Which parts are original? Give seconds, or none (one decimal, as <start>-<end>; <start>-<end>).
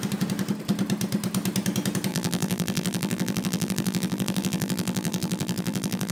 0.0-2.1